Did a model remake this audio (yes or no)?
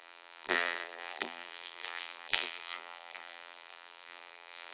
yes